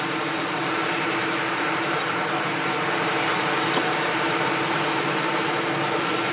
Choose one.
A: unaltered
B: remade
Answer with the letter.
B